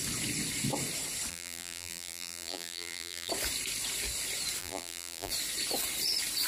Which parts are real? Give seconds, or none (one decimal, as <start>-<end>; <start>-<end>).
0.0-1.3; 3.3-4.6; 5.3-6.5